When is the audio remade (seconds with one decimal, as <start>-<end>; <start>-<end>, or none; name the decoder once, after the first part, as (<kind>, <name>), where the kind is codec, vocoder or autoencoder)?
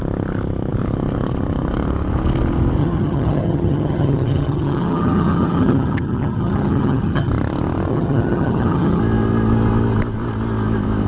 2.8-7.3 (vocoder, HiFi-GAN); 7.9-9.0